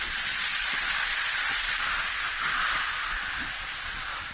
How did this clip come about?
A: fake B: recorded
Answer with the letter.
A